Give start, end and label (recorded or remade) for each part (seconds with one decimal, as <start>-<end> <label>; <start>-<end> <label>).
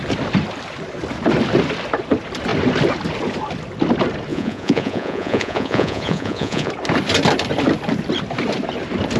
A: 0.0-4.3 recorded; 4.3-6.7 remade; 6.7-9.2 recorded